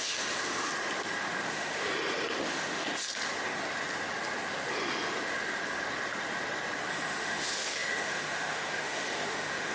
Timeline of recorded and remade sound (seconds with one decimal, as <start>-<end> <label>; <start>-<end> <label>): 0.0-0.7 remade; 0.7-1.5 recorded; 1.5-1.9 remade; 1.9-2.4 recorded; 2.4-2.9 remade; 2.9-6.9 recorded; 6.9-9.7 remade

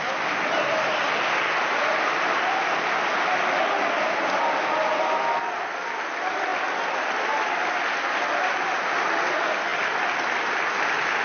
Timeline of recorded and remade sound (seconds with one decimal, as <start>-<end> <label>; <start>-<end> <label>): 0.0-11.2 recorded

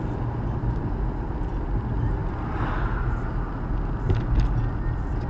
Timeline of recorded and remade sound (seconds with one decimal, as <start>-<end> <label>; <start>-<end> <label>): 0.0-5.3 recorded

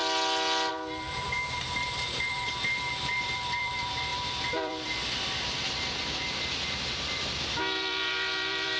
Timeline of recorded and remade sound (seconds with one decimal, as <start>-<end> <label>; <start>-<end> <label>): 0.0-0.7 recorded; 0.7-8.8 remade

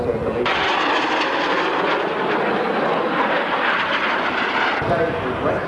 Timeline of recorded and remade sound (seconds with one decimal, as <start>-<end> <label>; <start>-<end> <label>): 0.0-5.7 recorded